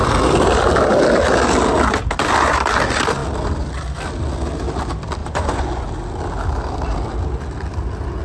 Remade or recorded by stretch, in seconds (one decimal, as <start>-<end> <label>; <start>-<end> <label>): 0.0-5.2 recorded; 5.2-5.8 remade; 5.8-8.2 recorded